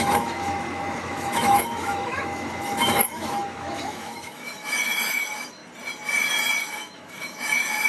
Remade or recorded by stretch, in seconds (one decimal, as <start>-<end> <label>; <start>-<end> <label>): 0.0-5.6 remade; 5.6-6.6 recorded; 6.6-7.9 remade